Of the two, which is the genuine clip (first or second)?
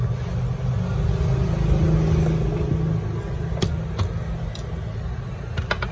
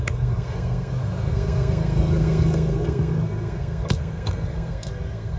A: first